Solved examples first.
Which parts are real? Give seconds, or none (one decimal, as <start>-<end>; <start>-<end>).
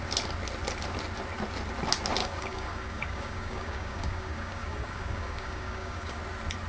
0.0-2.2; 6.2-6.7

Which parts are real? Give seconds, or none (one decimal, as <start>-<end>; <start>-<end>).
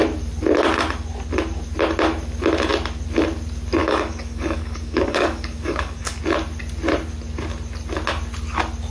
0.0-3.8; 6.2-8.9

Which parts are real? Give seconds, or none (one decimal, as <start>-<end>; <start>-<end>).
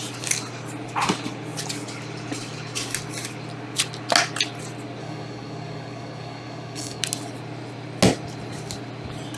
0.0-5.0; 7.0-9.4